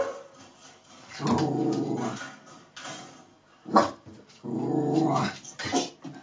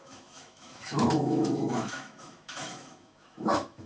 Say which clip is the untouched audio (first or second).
first